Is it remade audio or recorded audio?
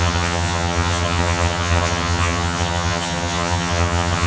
remade